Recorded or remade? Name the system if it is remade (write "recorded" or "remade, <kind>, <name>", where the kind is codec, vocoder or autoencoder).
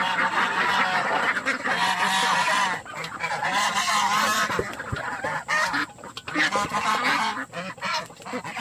recorded